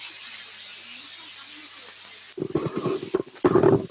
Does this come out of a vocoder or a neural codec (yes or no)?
no